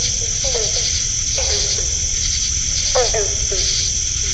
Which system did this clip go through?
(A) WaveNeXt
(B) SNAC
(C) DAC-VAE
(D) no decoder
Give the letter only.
D